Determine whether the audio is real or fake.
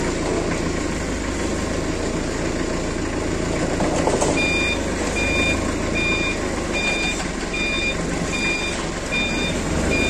real